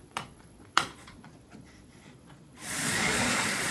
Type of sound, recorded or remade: remade